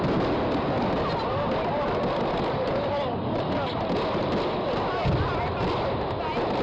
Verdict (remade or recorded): recorded